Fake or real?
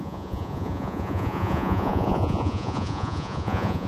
fake